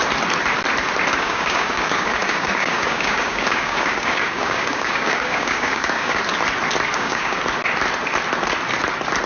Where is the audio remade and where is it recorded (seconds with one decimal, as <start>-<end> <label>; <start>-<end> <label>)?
0.0-1.1 recorded; 1.1-6.2 remade; 6.2-6.9 recorded; 6.9-7.4 remade; 7.4-9.3 recorded